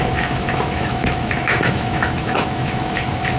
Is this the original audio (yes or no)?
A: no